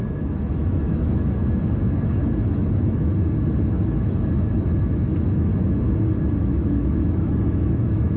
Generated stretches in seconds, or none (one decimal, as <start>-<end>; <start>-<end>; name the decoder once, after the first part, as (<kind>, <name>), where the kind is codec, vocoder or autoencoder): 0.0-1.4 (autoencoder, DAC-VAE); 2.2-3.1; 3.6-5.5; 6.4-8.2